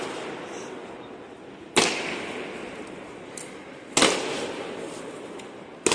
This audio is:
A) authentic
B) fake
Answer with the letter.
A